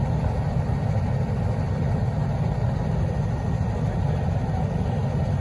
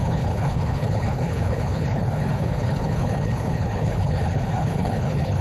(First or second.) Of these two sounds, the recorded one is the first